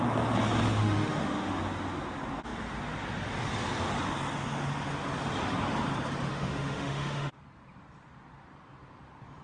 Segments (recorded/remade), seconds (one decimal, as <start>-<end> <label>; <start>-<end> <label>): 0.0-0.8 recorded; 0.8-1.6 remade; 1.6-6.3 recorded; 6.3-7.4 remade; 7.4-9.4 recorded